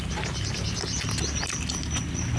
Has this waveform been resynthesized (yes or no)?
no